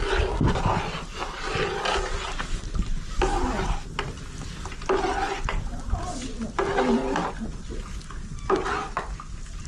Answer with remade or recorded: recorded